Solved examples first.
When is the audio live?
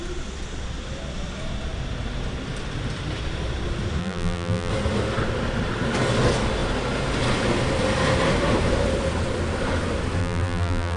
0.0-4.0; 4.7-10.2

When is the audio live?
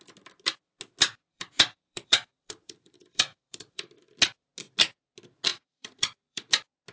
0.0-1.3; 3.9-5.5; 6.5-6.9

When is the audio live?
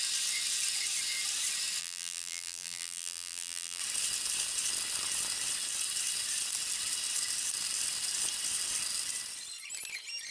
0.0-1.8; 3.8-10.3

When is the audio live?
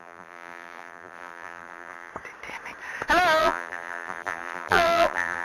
2.1-3.4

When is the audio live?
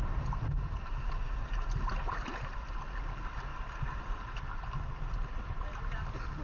0.0-3.5; 4.2-6.4